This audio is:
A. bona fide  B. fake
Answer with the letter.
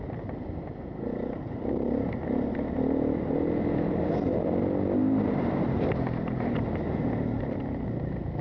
A